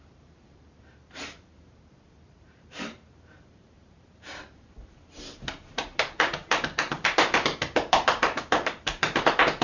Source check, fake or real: fake